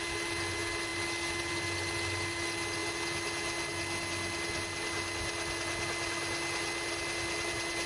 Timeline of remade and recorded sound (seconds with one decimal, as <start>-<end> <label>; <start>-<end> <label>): 0.0-7.9 recorded